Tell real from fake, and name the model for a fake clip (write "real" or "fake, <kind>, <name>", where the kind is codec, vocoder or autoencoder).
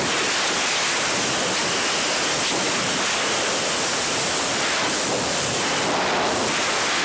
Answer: real